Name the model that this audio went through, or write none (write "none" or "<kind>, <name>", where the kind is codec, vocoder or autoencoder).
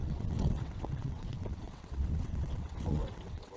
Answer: vocoder, WaveNeXt